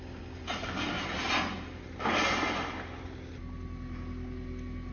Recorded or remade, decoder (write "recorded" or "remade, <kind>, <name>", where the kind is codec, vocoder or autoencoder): recorded